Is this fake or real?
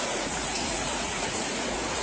fake